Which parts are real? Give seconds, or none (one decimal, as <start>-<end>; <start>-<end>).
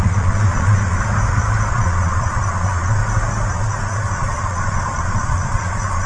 1.0-1.7; 3.0-3.5